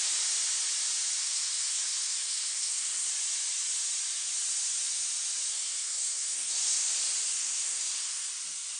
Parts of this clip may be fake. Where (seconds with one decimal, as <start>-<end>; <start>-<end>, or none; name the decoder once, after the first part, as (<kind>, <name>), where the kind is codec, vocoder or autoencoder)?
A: 1.2-3.1 (codec, SNAC); 5.5-6.9; 7.4-8.3